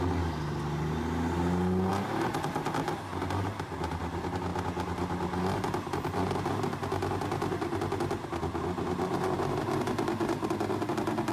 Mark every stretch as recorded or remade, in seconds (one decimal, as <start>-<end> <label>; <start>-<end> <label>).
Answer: 0.0-11.3 recorded